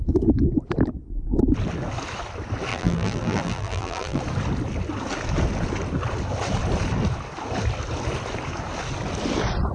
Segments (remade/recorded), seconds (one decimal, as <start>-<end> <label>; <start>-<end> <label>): 0.0-2.7 recorded; 2.7-4.2 remade; 4.2-9.7 recorded